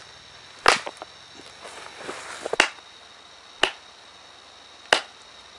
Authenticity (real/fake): real